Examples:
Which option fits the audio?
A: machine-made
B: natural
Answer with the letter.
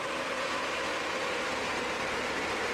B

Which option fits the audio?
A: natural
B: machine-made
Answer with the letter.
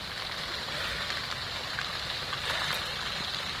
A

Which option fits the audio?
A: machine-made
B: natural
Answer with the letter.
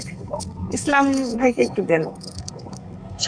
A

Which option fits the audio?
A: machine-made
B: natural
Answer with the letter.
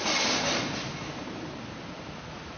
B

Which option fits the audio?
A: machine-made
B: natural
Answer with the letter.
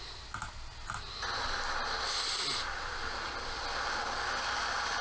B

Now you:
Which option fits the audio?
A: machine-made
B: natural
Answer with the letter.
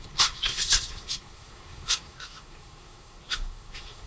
A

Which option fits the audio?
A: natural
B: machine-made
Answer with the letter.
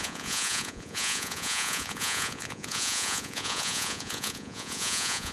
B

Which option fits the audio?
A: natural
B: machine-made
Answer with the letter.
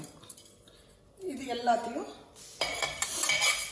A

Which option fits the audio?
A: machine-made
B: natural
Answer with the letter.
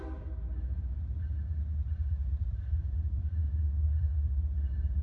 A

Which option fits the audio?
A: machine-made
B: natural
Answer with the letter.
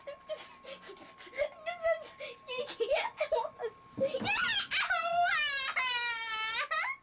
B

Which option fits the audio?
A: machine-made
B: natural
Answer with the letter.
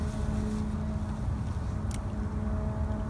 B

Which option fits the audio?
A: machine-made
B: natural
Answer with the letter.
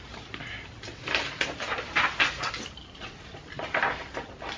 B